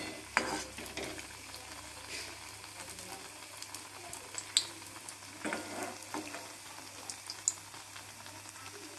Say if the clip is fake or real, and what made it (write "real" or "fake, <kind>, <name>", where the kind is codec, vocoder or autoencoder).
real